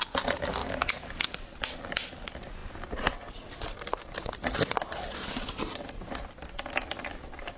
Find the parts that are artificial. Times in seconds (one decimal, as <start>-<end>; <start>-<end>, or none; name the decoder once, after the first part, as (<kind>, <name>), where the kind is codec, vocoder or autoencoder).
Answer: 0.6-1.2 (codec, DAC)